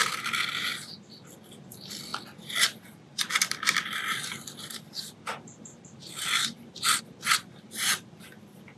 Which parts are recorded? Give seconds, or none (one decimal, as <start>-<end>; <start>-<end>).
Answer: 0.0-2.1; 7.0-8.8